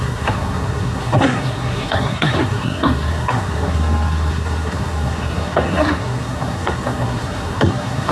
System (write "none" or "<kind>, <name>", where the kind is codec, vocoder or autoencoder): codec, SNAC